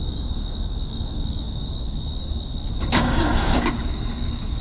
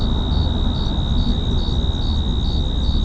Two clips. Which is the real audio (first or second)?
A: second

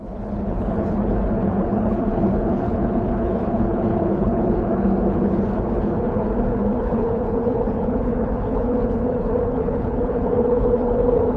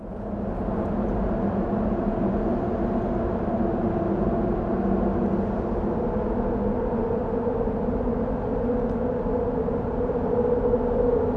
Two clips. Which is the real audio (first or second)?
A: second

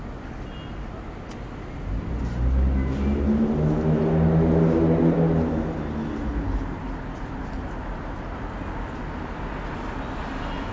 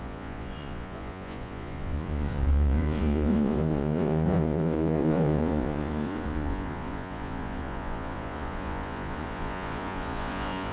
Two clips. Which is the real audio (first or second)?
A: first